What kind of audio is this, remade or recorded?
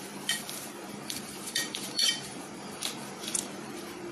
remade